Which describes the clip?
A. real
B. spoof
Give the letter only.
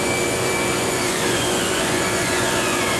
B